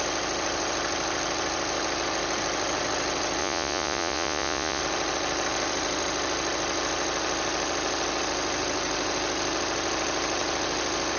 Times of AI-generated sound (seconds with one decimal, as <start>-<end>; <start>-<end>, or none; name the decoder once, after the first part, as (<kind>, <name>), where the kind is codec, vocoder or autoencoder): 3.4-4.8 (vocoder, Vocos)